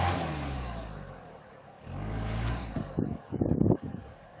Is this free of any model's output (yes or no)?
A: no